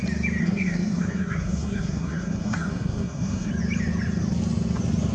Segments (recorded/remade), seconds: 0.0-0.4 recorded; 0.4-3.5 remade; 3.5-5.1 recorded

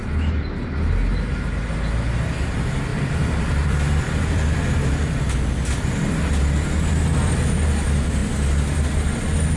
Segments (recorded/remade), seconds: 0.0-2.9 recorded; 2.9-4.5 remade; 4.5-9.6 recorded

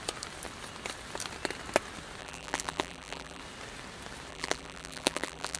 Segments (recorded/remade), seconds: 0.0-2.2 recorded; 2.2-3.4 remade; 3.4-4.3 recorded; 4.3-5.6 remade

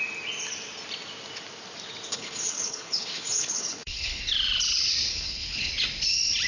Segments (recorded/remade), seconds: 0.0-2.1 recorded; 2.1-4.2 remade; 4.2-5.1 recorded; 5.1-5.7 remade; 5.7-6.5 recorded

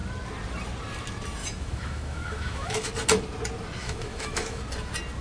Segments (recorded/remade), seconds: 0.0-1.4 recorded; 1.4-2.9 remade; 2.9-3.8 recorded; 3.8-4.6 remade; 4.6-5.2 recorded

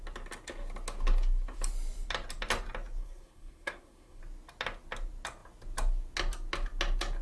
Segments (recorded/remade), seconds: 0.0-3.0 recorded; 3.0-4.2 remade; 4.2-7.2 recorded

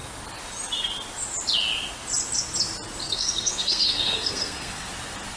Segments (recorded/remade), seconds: 0.0-3.0 recorded; 3.0-4.9 remade; 4.9-5.4 recorded